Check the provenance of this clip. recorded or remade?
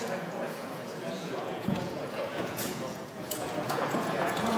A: remade